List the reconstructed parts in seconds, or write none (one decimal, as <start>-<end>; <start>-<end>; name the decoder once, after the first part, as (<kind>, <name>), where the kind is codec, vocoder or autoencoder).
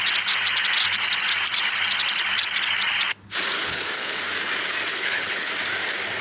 3.6-4.2 (codec, HILCodec); 4.9-5.5